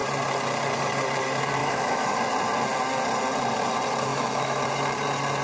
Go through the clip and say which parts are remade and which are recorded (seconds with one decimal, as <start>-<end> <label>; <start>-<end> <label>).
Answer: 0.0-1.6 recorded; 1.6-2.2 remade; 2.2-4.1 recorded; 4.1-4.6 remade; 4.6-5.4 recorded